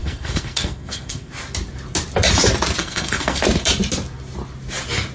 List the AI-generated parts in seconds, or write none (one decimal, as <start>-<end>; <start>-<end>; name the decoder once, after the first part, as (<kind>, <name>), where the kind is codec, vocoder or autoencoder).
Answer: 0.0-1.3 (codec, SNAC); 2.8-3.4